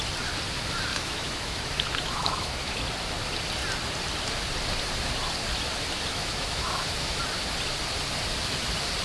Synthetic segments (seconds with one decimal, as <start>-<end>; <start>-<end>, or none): 0.9-2.8; 6.1-7.2

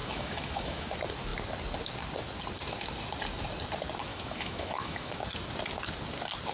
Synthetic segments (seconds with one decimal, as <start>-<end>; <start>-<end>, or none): 0.0-0.9; 4.1-5.2

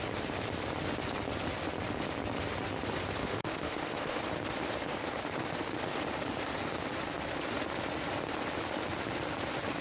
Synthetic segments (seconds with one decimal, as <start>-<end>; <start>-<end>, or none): 3.2-4.2

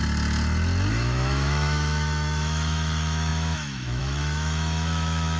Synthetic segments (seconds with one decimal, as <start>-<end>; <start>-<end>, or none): 0.9-5.4

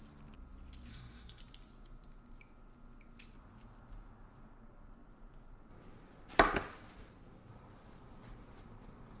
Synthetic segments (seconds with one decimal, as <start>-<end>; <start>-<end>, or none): 0.9-1.4

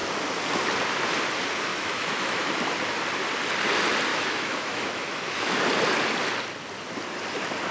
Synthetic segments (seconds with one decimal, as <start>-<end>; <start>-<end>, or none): 1.7-2.5; 4.1-5.5